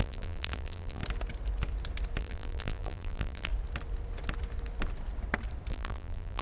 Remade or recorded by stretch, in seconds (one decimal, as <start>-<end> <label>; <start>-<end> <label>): 0.0-1.0 remade; 1.0-2.2 recorded; 2.2-3.5 remade; 3.5-5.7 recorded; 5.7-6.4 remade